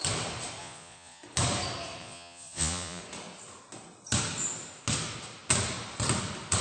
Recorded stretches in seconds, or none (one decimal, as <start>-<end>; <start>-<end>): 0.0-0.6; 1.2-2.0; 3.0-6.6